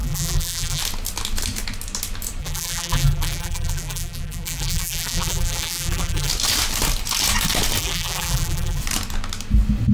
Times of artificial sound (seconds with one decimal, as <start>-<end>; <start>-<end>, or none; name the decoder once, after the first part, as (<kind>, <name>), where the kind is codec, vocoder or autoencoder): 0.0-0.8 (vocoder, BigVGAN v2); 2.4-6.3; 7.8-8.8